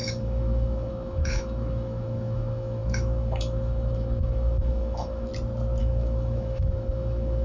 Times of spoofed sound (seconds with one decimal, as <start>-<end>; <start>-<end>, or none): 0.0-5.3; 5.8-7.4

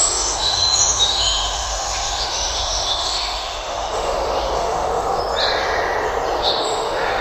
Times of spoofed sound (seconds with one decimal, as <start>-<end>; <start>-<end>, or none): 0.0-5.2; 6.4-7.2

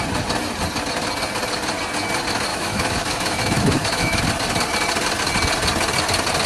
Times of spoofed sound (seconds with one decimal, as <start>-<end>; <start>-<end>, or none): 2.5-4.2

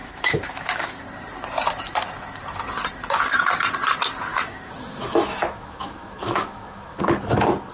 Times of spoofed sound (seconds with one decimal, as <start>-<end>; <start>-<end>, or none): 0.0-1.0; 4.3-7.0

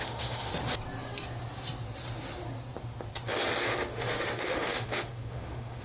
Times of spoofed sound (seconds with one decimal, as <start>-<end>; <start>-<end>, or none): 0.0-0.5; 3.9-5.8

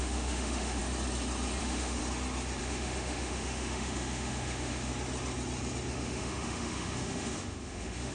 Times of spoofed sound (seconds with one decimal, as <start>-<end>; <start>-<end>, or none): 0.0-0.8; 1.6-2.0; 2.6-4.9; 5.9-8.1

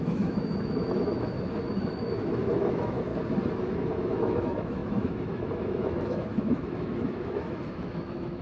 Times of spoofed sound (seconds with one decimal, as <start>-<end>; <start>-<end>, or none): 0.0-3.1; 3.6-8.4

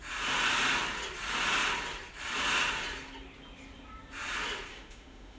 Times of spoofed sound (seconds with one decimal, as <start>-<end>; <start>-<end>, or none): 4.7-5.4